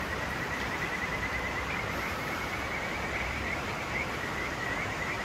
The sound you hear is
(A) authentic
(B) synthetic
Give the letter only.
A